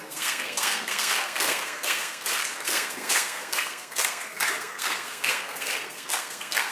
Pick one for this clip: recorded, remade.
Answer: remade